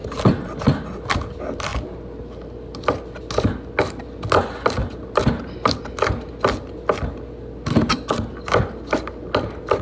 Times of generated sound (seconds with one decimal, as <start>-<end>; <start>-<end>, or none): 4.8-5.8